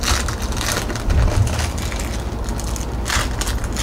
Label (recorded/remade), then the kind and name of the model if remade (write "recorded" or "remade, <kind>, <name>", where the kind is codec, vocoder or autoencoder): recorded